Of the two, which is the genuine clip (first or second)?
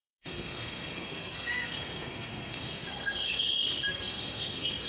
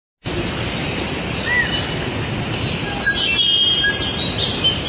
second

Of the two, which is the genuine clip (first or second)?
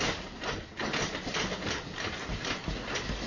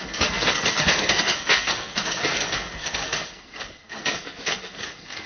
first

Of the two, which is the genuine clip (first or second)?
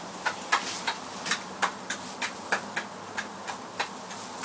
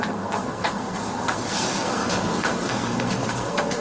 first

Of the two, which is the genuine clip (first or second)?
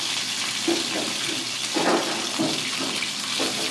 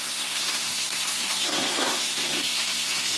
first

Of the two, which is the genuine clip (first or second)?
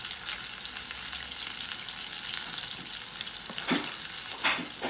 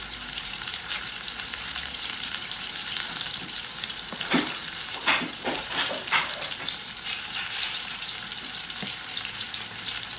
first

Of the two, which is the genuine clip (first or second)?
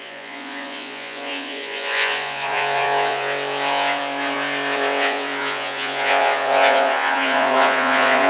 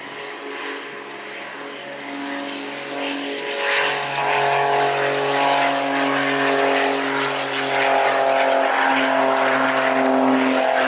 second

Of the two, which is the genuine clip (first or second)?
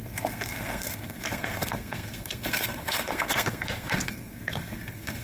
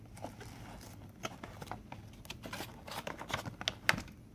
second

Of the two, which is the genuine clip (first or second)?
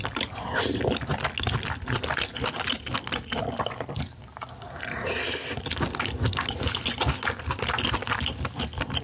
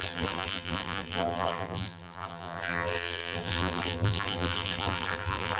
first